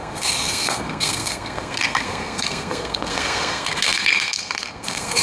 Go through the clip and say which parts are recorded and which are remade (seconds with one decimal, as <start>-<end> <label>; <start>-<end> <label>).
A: 0.0-5.2 remade